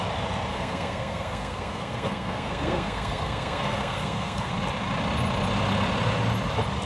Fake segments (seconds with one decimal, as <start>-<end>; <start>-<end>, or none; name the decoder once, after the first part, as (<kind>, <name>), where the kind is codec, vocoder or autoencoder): 0.5-4.5 (codec, SNAC)